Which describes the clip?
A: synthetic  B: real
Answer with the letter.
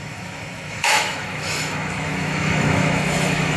A